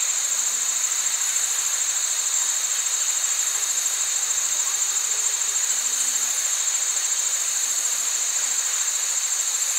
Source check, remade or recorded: remade